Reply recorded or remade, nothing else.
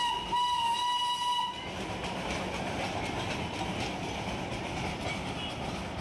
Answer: recorded